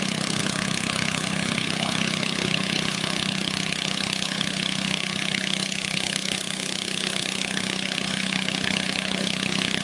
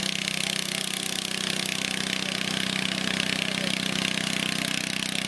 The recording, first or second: second